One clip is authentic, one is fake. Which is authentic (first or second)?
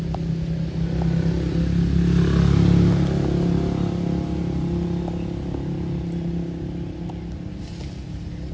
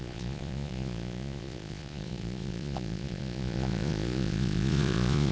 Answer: first